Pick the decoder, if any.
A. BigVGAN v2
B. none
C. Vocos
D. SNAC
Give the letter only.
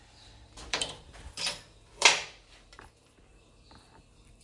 A